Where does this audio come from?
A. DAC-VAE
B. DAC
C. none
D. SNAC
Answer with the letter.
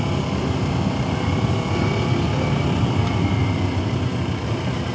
C